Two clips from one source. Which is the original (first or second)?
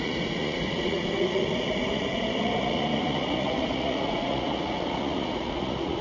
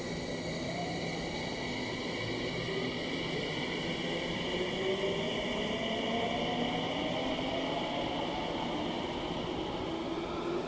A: second